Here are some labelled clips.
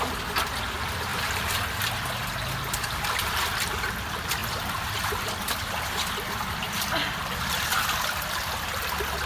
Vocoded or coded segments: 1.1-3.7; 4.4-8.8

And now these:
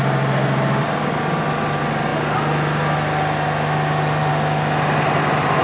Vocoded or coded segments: none

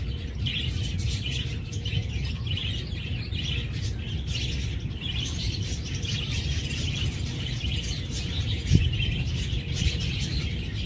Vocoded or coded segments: 0.0-2.6; 4.7-10.9